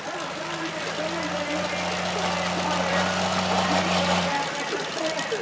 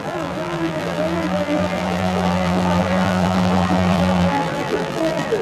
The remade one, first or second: second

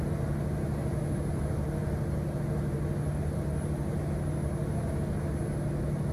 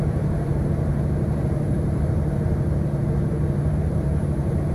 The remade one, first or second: second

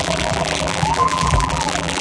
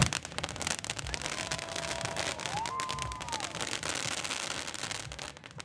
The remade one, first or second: first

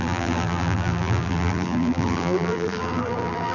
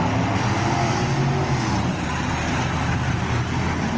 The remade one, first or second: first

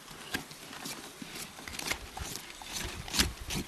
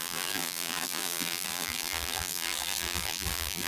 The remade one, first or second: second